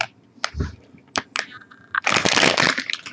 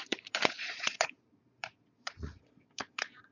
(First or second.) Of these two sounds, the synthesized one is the second